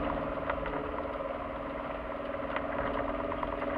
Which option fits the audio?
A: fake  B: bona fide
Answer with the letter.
B